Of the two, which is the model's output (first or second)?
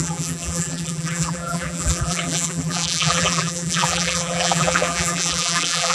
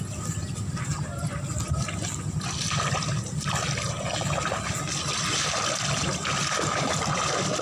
first